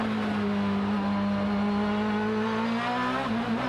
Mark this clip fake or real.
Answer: real